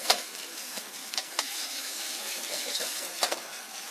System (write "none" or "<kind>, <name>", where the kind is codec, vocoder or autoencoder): codec, SNAC